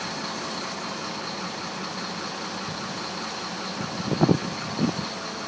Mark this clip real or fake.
real